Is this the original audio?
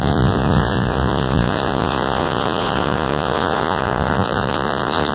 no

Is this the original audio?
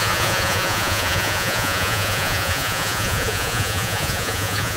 no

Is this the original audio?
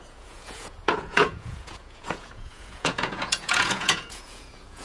no